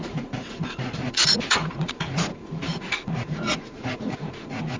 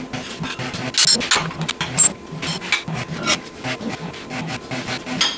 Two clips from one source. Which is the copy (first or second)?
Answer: first